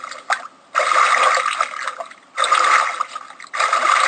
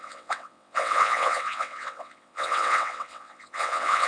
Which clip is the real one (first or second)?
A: first